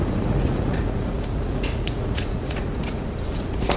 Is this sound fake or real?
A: fake